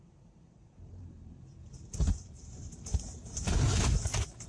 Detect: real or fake fake